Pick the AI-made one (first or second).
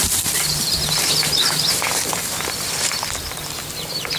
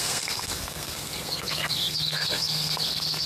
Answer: second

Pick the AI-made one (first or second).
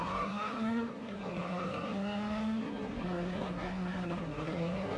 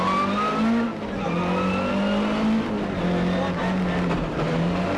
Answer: first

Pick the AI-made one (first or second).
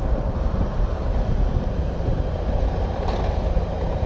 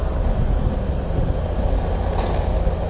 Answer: first